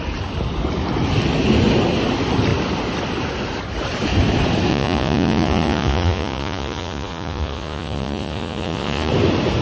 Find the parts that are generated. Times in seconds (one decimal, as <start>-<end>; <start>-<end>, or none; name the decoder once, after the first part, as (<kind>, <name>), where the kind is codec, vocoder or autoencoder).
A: 4.7-9.1 (vocoder, Vocos)